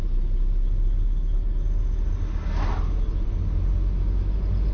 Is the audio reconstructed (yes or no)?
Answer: no